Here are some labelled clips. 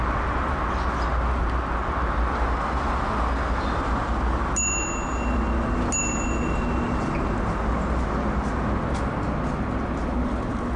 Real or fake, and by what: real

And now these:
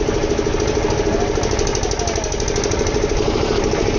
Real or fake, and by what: real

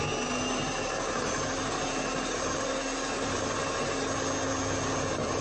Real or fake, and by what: real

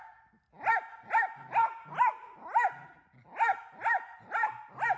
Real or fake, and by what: real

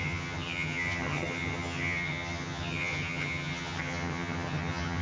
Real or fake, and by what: fake, vocoder, HiFi-GAN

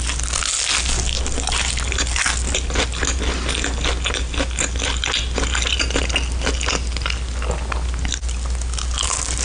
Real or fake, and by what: real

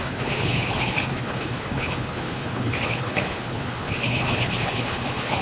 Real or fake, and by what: fake, codec, HILCodec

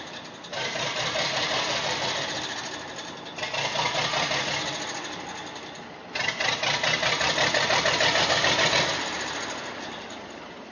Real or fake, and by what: real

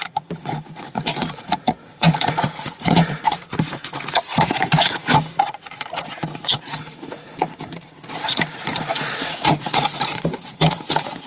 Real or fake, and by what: fake, vocoder, Vocos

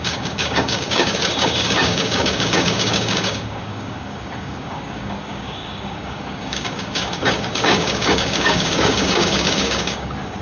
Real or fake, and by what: fake, codec, DAC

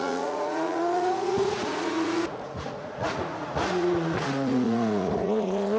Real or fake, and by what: fake, vocoder, Vocos